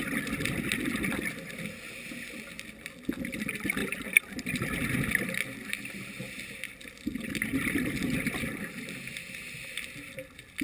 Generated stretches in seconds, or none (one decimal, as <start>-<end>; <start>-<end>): none